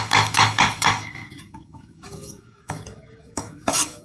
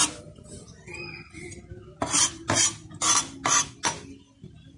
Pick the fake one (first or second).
first